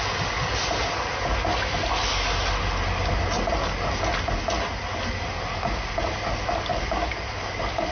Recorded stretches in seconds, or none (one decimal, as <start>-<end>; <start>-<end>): 0.0-6.7